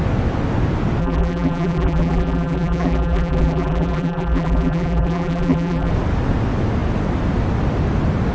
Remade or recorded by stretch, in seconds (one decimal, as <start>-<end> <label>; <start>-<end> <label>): 0.0-1.0 recorded; 1.0-5.9 remade; 5.9-8.3 recorded